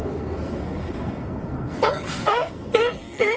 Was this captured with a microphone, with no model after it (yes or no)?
no